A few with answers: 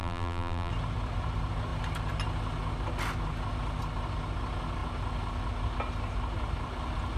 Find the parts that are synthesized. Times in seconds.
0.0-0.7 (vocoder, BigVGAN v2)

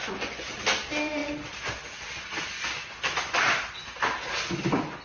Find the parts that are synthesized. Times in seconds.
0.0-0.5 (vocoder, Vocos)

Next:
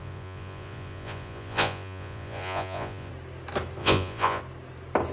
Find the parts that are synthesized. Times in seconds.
0.0-3.1 (vocoder, Vocos); 3.8-4.4

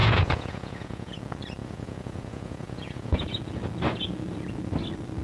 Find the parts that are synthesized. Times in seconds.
0.0-1.2 (vocoder, Vocos); 1.6-3.4